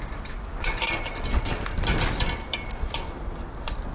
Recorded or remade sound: recorded